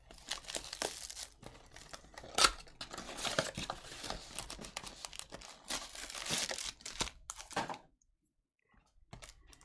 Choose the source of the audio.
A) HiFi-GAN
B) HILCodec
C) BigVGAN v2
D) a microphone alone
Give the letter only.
D